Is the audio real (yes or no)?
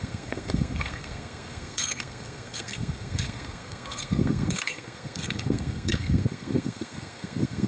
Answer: no